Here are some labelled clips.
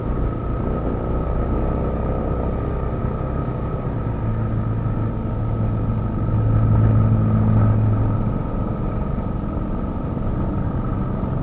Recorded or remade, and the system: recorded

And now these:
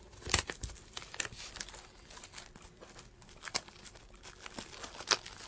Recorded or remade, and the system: recorded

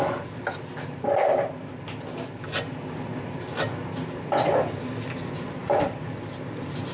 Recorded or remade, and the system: recorded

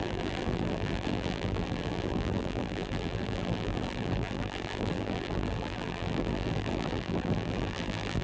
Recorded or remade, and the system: remade, vocoder, BigVGAN v2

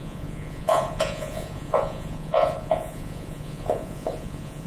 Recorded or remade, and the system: remade, vocoder, Vocos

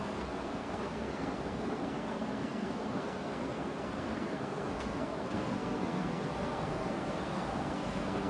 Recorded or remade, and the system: remade, codec, SNAC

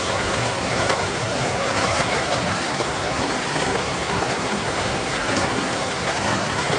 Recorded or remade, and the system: remade, codec, SNAC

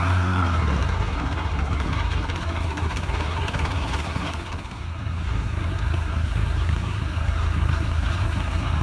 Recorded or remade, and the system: remade, codec, SNAC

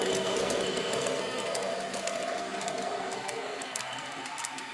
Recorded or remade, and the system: remade, codec, SNAC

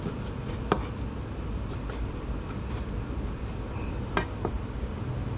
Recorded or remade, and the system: recorded